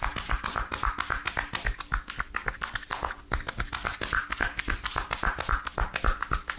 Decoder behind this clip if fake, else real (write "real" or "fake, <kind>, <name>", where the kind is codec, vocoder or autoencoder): real